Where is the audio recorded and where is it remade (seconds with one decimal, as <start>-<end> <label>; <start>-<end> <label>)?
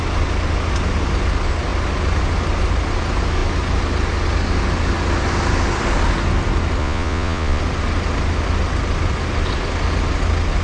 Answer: 0.0-6.8 recorded; 6.8-7.6 remade; 7.6-10.6 recorded